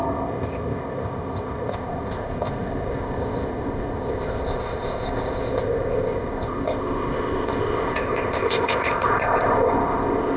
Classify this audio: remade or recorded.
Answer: remade